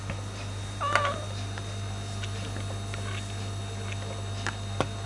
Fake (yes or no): no